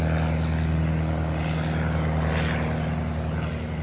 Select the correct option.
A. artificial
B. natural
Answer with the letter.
B